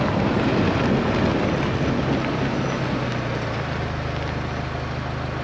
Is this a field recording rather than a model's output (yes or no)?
yes